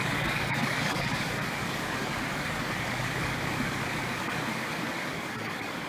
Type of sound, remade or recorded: remade